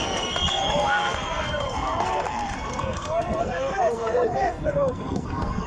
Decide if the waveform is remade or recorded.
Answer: remade